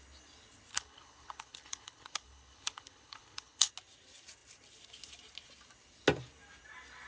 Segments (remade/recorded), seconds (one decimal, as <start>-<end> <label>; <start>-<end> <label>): 0.0-0.7 recorded; 0.7-3.7 remade; 3.7-7.1 recorded